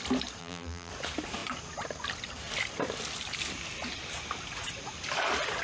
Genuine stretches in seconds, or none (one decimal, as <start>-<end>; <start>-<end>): 0.0-0.4; 0.9-5.6